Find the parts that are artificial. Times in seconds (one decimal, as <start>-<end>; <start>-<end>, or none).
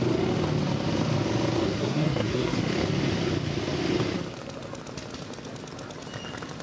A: 1.8-2.7